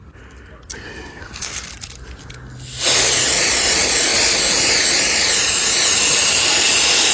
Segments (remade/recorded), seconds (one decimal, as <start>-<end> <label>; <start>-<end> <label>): 0.0-1.1 recorded; 1.1-1.7 remade; 1.7-7.1 recorded